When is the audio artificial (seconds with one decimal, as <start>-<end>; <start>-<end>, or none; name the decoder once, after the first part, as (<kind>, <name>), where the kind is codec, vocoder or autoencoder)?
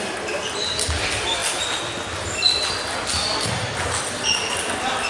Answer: none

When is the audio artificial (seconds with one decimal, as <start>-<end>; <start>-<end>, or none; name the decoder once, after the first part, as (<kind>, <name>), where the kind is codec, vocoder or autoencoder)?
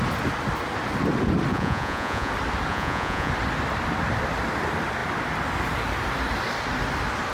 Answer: 1.5-2.3 (vocoder, Vocos); 2.7-3.3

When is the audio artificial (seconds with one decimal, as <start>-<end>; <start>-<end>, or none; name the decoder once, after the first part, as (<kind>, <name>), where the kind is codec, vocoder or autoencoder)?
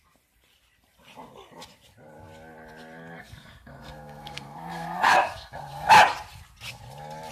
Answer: 3.2-5.9 (codec, SNAC)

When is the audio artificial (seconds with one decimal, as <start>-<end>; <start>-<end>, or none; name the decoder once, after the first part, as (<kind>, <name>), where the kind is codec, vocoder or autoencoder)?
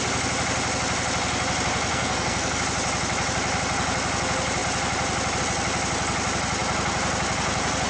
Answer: 1.9-2.6 (codec, SNAC)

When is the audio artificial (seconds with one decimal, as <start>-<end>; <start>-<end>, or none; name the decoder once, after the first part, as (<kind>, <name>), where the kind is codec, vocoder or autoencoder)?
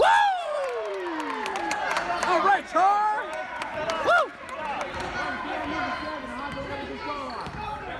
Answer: 0.4-2.5 (vocoder, BigVGAN v2); 6.3-6.9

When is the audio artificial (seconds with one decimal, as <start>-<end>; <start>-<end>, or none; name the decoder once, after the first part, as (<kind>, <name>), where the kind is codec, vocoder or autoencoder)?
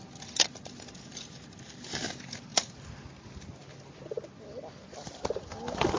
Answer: none